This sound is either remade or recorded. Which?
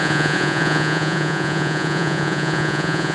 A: remade